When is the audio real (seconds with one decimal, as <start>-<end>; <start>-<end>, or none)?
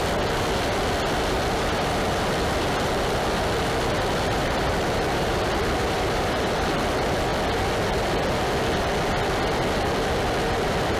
0.0-4.3; 6.7-11.0